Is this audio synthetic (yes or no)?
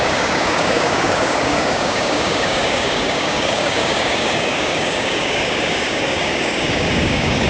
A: yes